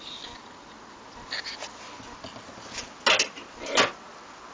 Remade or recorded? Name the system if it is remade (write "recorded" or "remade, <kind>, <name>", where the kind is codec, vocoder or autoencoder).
recorded